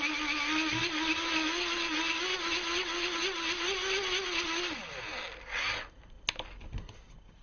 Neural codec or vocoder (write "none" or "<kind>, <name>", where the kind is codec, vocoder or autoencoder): none